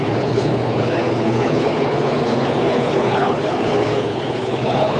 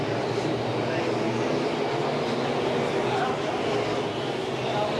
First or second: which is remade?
first